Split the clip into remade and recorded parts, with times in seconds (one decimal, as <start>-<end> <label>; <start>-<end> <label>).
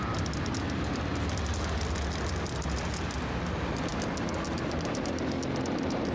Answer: 0.0-6.1 recorded